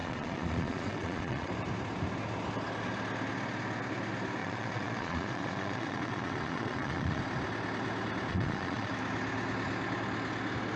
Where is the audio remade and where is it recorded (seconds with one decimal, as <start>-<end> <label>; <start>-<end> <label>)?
0.0-1.5 remade; 1.5-4.4 recorded; 4.4-7.2 remade; 7.2-8.3 recorded; 8.3-8.9 remade; 8.9-10.8 recorded